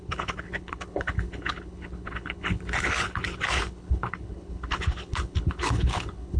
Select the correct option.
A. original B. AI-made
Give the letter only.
B